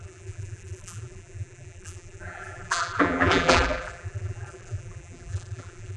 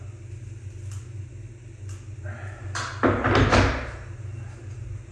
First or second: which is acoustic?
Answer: second